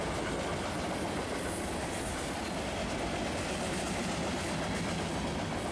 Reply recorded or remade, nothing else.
recorded